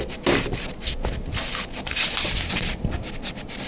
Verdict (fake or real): real